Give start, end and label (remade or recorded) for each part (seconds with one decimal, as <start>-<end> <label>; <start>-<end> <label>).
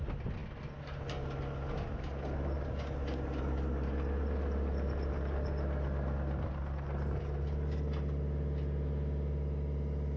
0.0-10.2 recorded